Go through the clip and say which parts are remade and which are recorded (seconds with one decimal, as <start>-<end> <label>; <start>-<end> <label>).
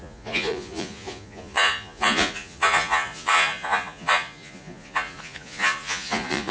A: 0.0-6.5 remade